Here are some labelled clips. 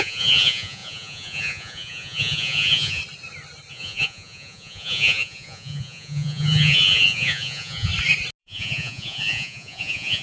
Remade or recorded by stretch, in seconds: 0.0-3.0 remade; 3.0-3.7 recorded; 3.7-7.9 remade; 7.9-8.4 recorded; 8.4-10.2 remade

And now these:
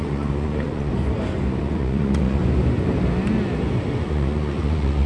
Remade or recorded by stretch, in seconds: 0.0-0.9 remade; 0.9-1.6 recorded; 1.6-2.4 remade; 2.4-3.9 recorded; 3.9-5.1 remade